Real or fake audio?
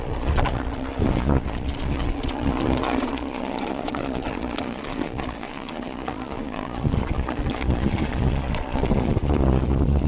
fake